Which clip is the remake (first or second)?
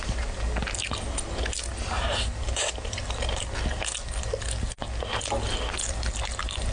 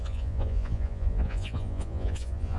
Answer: second